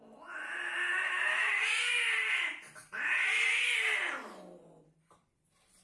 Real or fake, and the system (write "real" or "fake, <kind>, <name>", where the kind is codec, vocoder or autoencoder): real